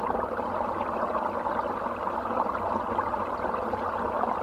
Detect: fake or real real